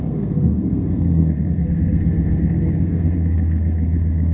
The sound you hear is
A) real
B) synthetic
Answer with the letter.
B